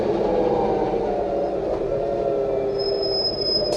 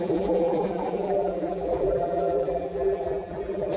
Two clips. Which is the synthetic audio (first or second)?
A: second